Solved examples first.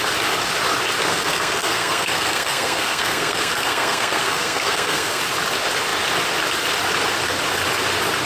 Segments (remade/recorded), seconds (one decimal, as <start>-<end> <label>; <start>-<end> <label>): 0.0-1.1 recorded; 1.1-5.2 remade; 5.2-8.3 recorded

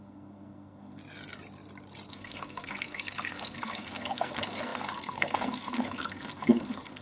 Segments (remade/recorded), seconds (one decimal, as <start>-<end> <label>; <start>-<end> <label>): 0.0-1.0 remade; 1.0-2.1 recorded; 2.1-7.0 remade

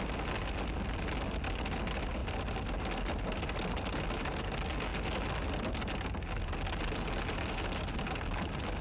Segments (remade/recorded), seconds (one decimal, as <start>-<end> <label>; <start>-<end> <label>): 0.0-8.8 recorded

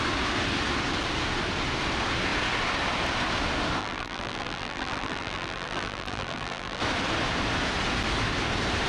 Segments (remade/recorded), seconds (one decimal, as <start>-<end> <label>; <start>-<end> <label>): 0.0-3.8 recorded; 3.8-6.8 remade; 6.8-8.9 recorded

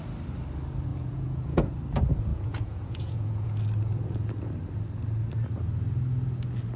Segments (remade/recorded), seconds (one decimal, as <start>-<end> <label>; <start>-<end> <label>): 0.0-0.9 recorded; 0.9-1.7 remade; 1.7-2.3 recorded; 2.3-3.6 remade; 3.6-6.8 recorded